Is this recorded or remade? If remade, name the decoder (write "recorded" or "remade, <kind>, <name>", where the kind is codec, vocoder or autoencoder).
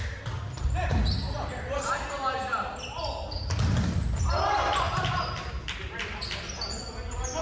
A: recorded